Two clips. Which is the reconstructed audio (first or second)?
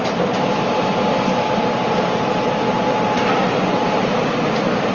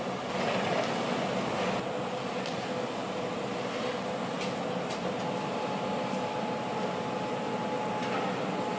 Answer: first